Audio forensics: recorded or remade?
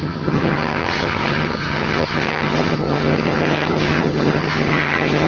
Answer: remade